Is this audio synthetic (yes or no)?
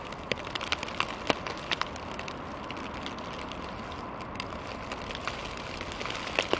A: no